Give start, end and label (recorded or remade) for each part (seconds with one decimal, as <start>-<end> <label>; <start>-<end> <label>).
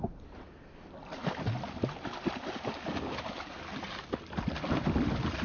0.0-5.4 recorded